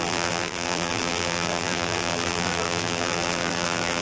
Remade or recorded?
remade